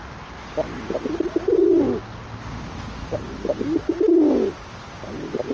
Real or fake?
real